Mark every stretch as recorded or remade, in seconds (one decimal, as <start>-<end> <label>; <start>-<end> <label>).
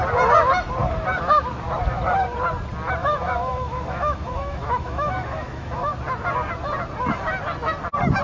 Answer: 0.0-3.0 recorded; 3.0-5.9 remade; 5.9-8.2 recorded